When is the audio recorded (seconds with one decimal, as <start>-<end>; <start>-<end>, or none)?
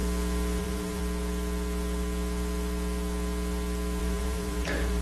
0.0-0.6; 1.0-4.0